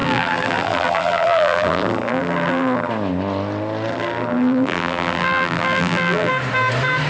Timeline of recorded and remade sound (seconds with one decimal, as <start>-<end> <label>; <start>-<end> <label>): 0.0-2.9 remade; 2.9-3.9 recorded; 3.9-6.3 remade; 6.3-7.1 recorded